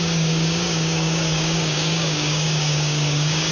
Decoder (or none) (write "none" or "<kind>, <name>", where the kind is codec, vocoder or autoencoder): codec, DAC